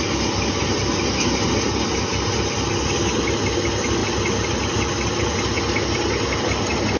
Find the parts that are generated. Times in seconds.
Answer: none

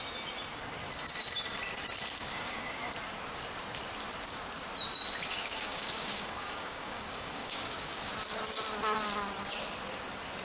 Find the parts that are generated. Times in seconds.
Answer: 2.2-2.9; 5.3-8.1

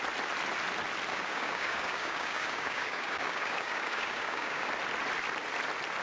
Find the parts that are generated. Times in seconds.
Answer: 1.1-4.7

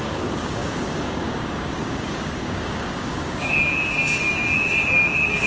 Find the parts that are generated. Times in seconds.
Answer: 0.0-5.5

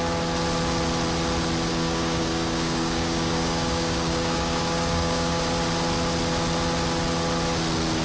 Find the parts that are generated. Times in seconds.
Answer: 1.7-5.4